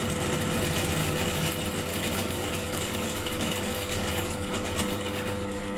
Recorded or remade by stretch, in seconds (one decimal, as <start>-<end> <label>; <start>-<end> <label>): 0.0-1.0 recorded; 1.0-1.5 remade; 1.5-1.9 recorded; 1.9-5.8 remade